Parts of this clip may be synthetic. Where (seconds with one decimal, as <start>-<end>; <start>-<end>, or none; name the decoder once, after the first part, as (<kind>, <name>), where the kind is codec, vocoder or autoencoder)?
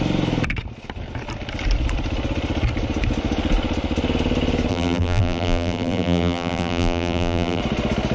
4.7-7.6 (vocoder, BigVGAN v2)